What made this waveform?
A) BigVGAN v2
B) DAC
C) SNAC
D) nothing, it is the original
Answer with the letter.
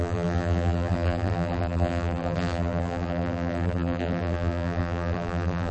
A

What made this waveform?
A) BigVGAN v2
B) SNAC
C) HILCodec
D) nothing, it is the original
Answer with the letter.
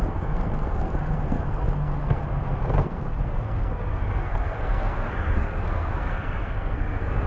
B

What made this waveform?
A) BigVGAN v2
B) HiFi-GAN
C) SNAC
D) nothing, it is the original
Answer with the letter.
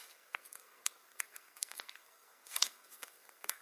C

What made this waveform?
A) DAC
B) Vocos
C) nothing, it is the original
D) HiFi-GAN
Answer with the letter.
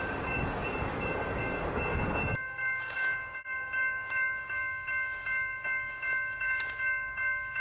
A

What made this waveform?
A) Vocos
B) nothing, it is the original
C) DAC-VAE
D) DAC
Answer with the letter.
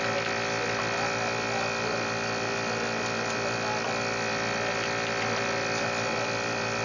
B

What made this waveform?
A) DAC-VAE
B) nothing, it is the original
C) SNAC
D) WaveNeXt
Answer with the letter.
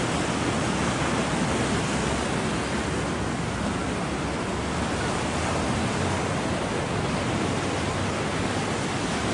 B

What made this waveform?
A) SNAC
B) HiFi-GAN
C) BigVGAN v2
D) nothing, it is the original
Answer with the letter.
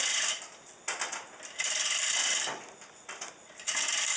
D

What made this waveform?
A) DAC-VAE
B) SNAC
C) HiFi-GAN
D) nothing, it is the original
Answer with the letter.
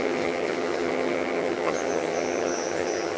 C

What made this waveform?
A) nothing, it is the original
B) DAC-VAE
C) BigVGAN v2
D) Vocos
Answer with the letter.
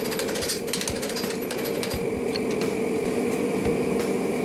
A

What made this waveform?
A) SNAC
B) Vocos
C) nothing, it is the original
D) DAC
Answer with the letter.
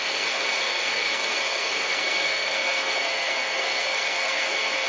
A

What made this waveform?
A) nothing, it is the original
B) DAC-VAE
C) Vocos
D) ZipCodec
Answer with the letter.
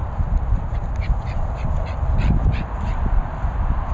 A